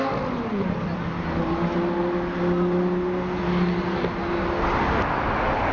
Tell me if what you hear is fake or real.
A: real